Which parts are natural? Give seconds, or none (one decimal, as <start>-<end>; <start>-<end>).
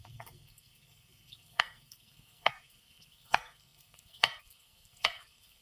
none